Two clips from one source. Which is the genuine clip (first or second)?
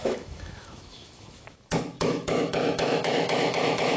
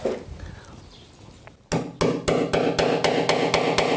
second